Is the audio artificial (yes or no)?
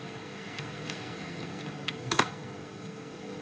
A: yes